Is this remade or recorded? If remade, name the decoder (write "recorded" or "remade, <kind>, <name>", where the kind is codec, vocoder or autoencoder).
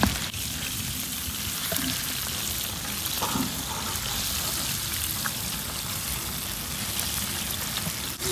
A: recorded